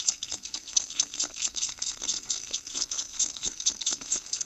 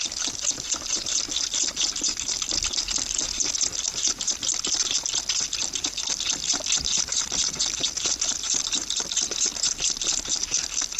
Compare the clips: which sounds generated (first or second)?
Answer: first